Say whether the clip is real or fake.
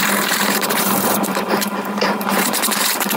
fake